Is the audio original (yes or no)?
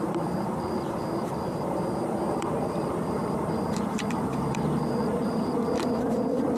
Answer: no